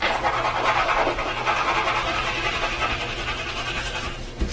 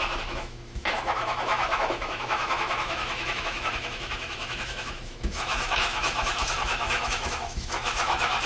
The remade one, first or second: second